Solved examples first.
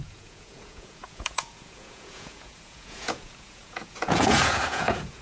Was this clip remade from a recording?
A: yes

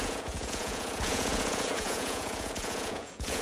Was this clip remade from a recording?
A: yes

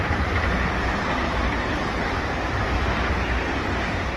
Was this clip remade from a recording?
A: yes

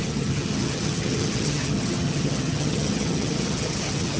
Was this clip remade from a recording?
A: yes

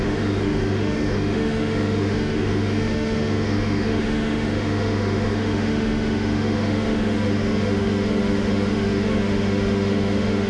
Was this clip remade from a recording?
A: yes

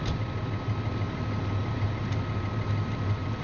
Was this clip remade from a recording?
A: no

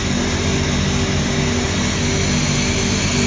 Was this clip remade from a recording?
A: no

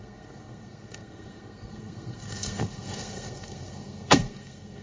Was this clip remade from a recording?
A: yes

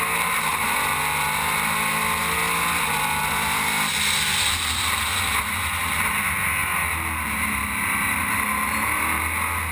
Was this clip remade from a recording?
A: no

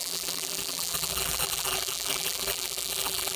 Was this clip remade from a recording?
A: yes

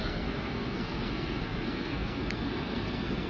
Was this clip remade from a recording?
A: yes